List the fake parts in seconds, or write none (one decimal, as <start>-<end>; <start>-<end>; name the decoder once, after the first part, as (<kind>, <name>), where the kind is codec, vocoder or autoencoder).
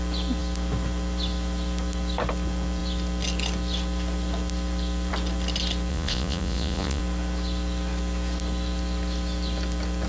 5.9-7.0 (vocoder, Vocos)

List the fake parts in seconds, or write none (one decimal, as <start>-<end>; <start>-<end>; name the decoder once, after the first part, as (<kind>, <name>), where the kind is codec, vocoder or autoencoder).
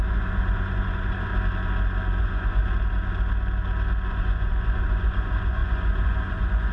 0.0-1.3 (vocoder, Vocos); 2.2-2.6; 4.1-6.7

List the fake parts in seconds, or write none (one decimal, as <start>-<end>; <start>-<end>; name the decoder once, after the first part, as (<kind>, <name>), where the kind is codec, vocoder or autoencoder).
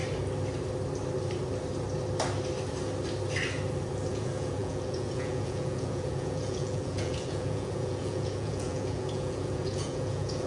4.1-10.5 (vocoder, Vocos)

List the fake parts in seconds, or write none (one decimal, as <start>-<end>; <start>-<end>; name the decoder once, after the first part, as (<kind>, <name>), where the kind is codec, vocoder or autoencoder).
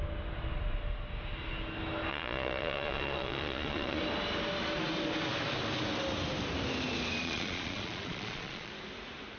2.1-4.0 (vocoder, Vocos); 7.2-8.7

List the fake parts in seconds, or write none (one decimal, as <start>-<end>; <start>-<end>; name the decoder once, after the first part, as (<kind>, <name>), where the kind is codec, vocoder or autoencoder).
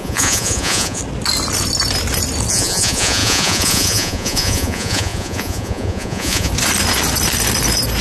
0.0-1.0 (vocoder, Vocos); 2.5-6.5